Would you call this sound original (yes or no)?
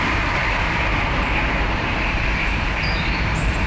no